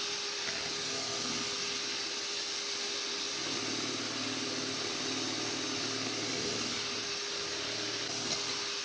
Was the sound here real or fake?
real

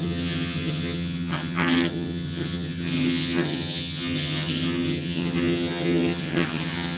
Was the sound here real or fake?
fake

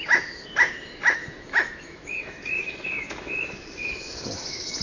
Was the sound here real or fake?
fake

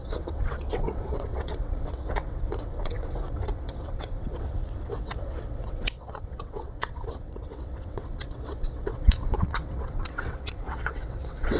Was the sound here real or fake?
fake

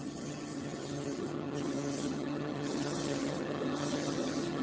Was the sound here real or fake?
fake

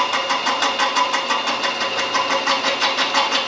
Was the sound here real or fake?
real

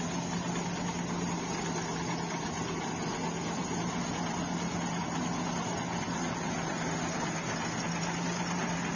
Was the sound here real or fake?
real